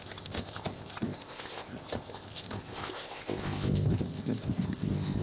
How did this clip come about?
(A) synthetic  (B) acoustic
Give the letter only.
A